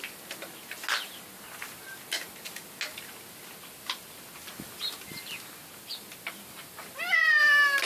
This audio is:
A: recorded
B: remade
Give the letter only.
A